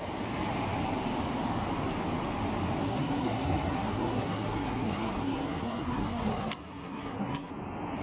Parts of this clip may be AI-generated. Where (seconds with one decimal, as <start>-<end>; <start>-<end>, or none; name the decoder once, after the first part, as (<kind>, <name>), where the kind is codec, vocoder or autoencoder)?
2.8-7.5 (codec, SNAC)